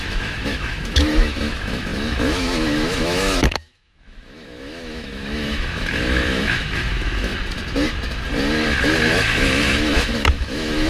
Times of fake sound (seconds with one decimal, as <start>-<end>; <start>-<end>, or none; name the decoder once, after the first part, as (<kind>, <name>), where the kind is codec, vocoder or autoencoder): 0.0-7.3 (autoencoder, DAC-VAE); 8.8-10.9